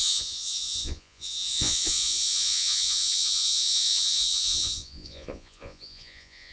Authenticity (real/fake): fake